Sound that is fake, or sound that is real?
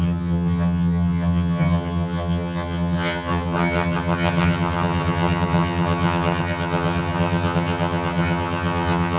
fake